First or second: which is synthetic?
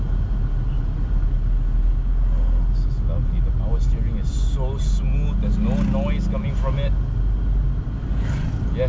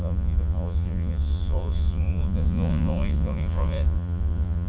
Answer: second